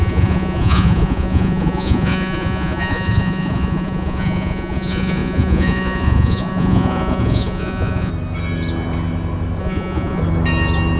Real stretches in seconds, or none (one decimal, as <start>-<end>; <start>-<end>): 8.1-9.6; 10.2-11.0